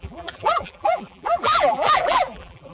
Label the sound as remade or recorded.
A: remade